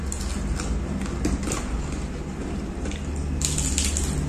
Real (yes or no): yes